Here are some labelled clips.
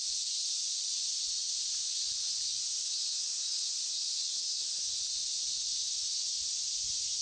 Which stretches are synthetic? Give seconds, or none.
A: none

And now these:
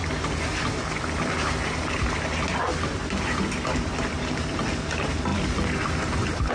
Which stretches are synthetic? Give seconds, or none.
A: 5.3-6.5 (vocoder, BigVGAN v2)